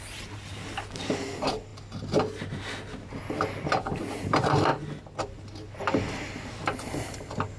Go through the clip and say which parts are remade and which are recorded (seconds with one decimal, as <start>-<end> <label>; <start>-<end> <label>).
0.0-7.6 recorded